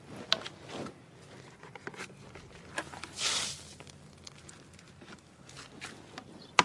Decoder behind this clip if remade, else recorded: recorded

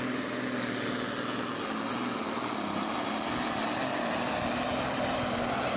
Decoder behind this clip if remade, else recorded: recorded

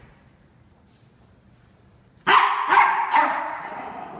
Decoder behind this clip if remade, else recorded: recorded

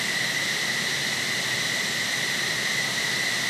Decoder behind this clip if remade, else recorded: recorded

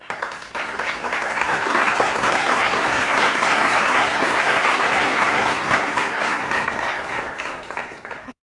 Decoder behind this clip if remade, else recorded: remade, codec, SNAC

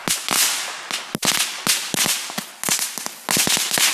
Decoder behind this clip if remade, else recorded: recorded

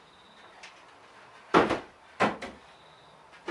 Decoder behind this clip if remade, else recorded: recorded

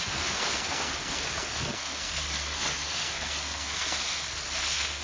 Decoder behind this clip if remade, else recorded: remade, codec, SNAC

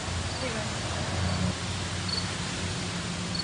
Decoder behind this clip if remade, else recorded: recorded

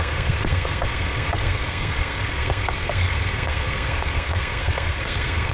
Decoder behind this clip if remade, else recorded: remade, codec, SNAC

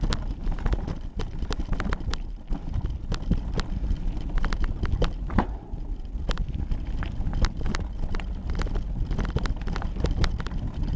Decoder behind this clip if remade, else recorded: recorded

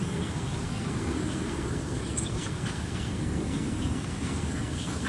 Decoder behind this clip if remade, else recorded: remade, codec, SNAC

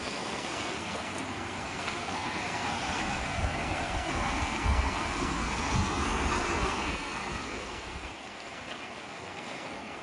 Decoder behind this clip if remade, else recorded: remade, codec, SNAC